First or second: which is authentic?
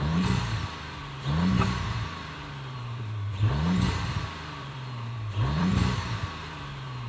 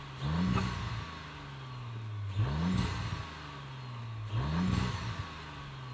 second